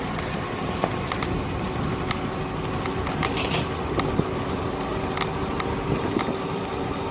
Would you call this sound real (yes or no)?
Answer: yes